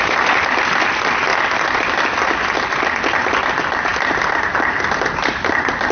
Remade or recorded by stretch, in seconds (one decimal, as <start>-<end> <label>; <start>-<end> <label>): 0.0-5.9 recorded